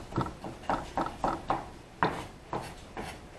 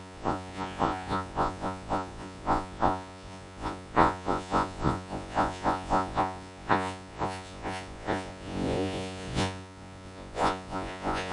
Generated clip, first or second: second